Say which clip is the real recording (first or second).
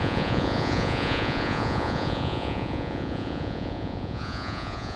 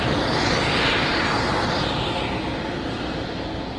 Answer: second